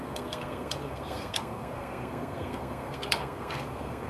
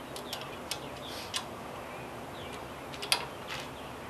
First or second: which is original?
second